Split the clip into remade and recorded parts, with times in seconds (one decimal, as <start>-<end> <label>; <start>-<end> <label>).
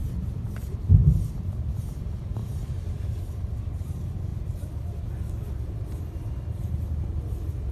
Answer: 0.0-0.7 recorded; 0.7-4.3 remade; 4.3-7.7 recorded